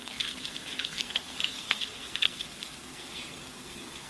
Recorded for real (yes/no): no